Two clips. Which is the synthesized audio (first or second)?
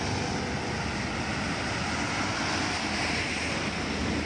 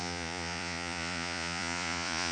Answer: second